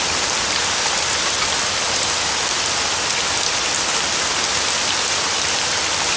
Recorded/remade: recorded